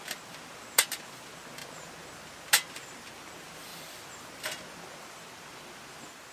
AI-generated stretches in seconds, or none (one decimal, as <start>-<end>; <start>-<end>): 3.7-4.3